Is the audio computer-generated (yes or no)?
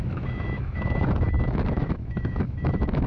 yes